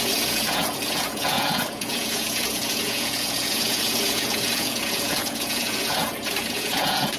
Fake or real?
fake